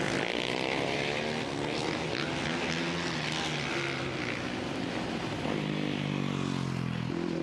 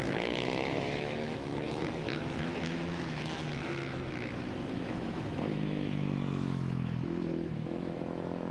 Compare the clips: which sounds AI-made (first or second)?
second